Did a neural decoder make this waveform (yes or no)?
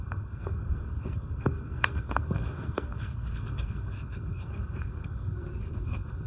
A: yes